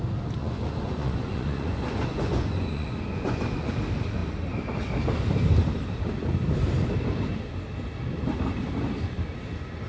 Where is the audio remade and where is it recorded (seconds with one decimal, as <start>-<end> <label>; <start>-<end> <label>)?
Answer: 0.0-0.4 recorded; 0.4-3.7 remade; 3.7-9.9 recorded

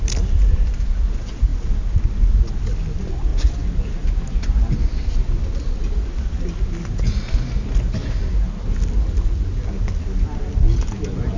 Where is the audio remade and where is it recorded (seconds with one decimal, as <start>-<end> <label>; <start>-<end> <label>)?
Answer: 0.0-11.4 recorded

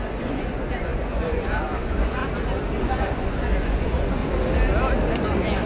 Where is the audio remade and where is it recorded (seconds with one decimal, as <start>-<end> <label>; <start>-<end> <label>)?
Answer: 0.0-2.2 remade; 2.2-2.8 recorded; 2.8-4.2 remade; 4.2-5.1 recorded; 5.1-5.7 remade

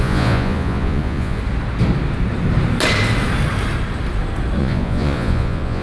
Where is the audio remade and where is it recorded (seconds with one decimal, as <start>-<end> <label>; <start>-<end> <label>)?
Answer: 0.0-1.4 remade; 1.4-4.6 recorded; 4.6-5.8 remade

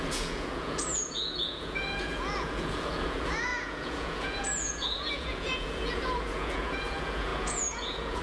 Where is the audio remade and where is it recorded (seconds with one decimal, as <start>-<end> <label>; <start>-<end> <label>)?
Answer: 0.0-8.2 remade

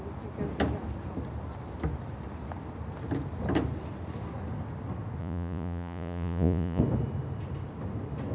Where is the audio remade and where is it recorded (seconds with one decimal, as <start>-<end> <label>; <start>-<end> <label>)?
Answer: 0.0-5.2 recorded; 5.2-6.8 remade; 6.8-8.3 recorded

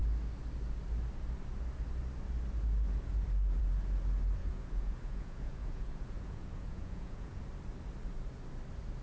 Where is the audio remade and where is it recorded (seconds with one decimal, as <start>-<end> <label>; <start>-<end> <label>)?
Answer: 0.0-4.4 recorded; 4.4-7.4 remade; 7.4-9.0 recorded